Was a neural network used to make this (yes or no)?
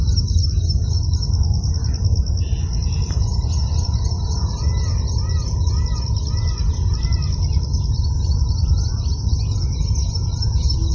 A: no